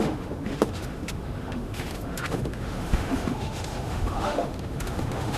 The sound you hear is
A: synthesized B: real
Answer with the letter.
A